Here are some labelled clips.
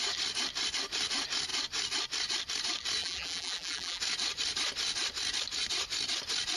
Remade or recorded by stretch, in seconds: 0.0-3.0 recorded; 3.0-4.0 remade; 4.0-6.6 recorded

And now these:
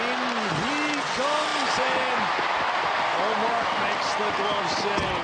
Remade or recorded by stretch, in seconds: 0.0-5.2 recorded

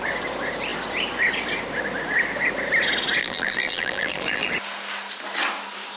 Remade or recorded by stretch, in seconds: 0.0-3.2 recorded; 3.2-4.5 remade; 4.5-6.0 recorded

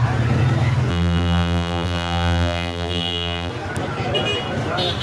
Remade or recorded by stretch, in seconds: 0.0-0.9 recorded; 0.9-3.5 remade; 3.5-5.0 recorded

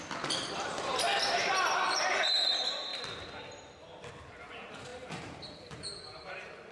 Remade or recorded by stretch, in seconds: 0.0-2.9 remade; 2.9-4.5 recorded; 4.5-6.7 remade